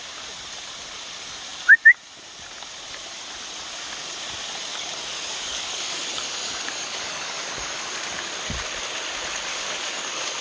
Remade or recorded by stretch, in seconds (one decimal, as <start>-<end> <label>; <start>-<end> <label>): 0.0-4.7 recorded; 4.7-7.9 remade; 7.9-9.5 recorded; 9.5-10.4 remade